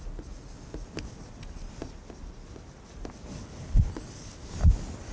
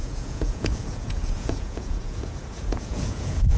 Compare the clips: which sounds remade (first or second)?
second